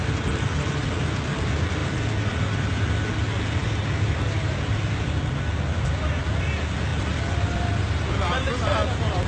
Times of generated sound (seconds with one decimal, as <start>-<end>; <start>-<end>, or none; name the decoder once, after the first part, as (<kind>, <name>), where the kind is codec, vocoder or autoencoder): none